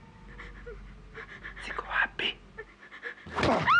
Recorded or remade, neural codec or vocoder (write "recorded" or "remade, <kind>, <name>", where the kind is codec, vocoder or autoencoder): recorded